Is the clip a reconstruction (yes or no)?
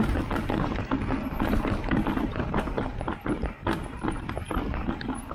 no